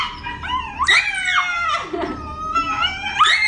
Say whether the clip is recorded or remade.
recorded